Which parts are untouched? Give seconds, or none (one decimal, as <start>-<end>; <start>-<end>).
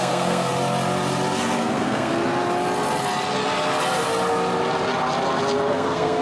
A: 0.5-1.6; 2.1-5.7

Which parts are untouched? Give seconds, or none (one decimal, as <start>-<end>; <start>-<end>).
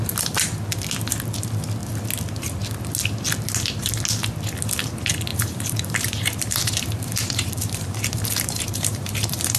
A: 0.0-5.3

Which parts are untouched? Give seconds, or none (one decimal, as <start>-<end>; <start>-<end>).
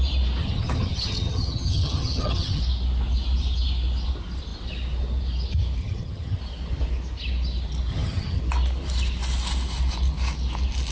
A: 0.0-0.4; 2.6-5.8; 6.4-7.9; 8.4-10.9